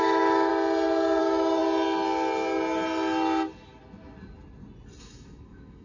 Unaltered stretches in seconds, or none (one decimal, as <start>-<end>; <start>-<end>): 0.5-1.2; 1.6-5.0